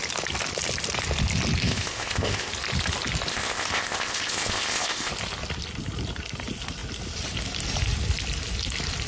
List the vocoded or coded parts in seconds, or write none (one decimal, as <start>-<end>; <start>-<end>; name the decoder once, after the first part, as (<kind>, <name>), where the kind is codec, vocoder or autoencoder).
1.6-2.5 (codec, ZipCodec); 3.3-5.1